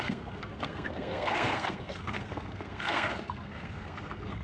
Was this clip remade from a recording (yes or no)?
yes